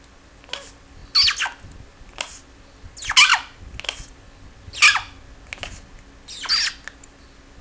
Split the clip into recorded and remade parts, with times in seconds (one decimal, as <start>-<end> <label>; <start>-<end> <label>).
0.0-7.6 recorded